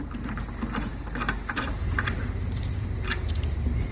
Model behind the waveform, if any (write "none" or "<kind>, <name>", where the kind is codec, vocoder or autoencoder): vocoder, BigVGAN v2